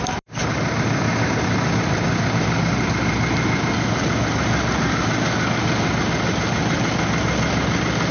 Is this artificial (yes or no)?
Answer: no